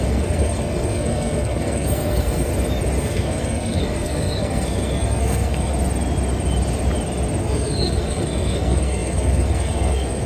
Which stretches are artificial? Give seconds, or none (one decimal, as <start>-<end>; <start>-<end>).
0.0-2.5; 3.0-5.7; 7.4-10.3